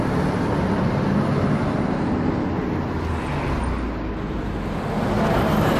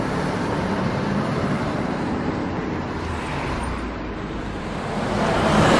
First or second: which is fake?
second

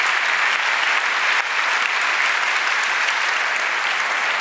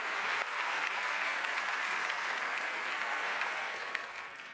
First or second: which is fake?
second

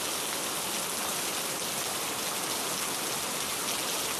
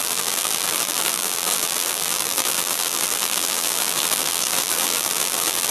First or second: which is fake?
second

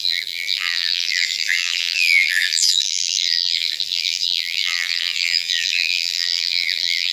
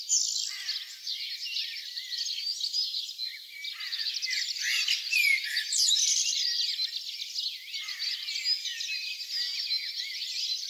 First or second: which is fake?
first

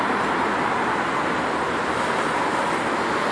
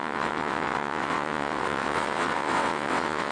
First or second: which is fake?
second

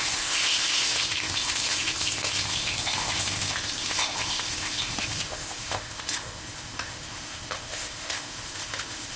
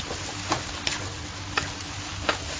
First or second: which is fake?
first